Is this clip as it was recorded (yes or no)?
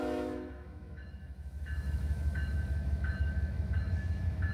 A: no